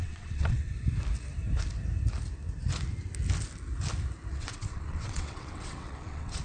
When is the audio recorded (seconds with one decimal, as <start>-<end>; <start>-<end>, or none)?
0.7-4.3